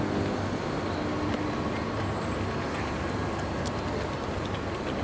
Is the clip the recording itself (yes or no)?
yes